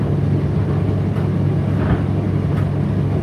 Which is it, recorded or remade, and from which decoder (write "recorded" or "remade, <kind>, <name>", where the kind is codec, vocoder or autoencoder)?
recorded